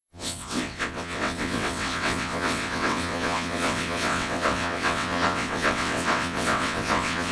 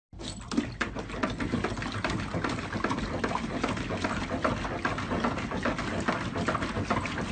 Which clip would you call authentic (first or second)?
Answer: second